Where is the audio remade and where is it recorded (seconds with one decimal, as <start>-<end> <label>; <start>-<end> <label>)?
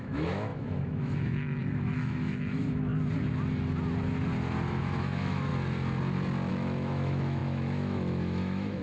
0.0-2.9 remade; 2.9-4.8 recorded; 4.8-5.5 remade; 5.5-6.5 recorded; 6.5-8.8 remade